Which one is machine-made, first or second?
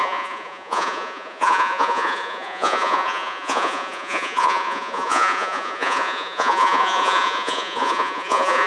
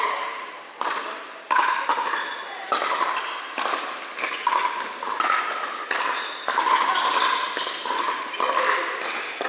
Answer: first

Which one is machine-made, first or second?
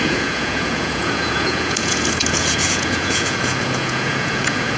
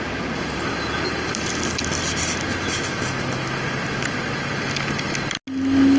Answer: first